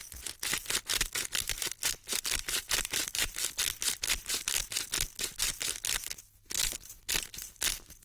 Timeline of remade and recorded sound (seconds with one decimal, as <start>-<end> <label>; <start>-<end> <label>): 0.0-8.0 recorded